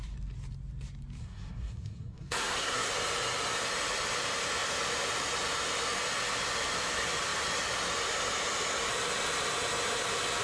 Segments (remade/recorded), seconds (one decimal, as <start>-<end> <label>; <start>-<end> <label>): 0.0-1.2 recorded; 1.2-2.9 remade; 2.9-10.4 recorded